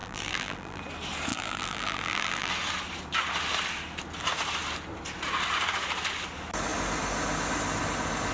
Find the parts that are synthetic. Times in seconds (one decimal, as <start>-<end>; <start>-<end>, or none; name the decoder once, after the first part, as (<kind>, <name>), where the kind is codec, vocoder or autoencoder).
0.0-0.8 (vocoder, BigVGAN v2); 1.3-2.5